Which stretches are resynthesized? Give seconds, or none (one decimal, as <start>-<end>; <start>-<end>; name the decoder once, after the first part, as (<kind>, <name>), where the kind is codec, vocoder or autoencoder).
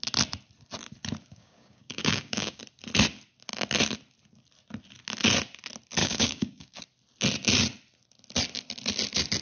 1.3-2.6 (codec, DAC); 6.0-6.8